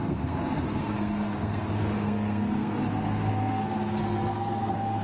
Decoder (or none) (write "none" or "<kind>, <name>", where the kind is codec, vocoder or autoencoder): codec, SNAC